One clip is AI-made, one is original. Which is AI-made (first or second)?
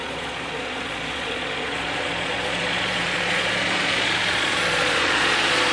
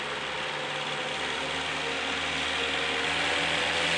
first